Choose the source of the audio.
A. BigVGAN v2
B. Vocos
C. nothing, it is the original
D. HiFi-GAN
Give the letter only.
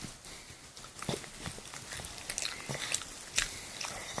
C